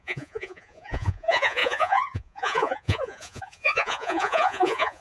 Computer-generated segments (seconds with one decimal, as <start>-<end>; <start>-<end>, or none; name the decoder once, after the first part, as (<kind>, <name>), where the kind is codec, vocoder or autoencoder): 0.0-5.0 (vocoder, Vocos)